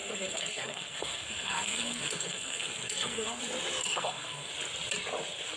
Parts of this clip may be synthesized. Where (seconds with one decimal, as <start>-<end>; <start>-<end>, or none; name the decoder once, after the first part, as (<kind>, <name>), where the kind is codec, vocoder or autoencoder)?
0.0-3.4 (codec, SNAC); 3.8-4.5